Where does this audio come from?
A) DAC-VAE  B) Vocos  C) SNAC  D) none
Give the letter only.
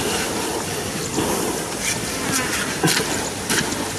D